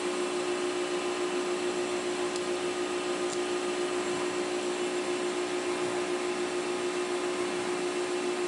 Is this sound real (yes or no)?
yes